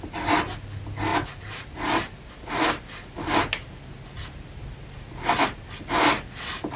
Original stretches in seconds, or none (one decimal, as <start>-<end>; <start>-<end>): 0.0-6.8